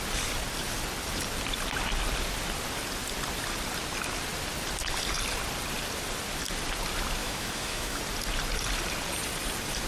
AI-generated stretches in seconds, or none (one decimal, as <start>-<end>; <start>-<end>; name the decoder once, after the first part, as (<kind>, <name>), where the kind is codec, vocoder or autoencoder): 7.2-8.0 (autoencoder, DAC-VAE)